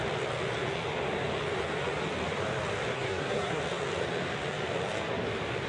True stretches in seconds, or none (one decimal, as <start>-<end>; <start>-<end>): 0.0-2.9; 3.6-5.7